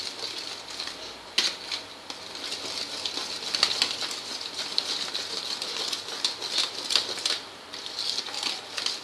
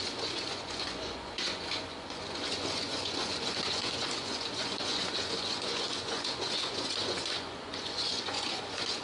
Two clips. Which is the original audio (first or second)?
first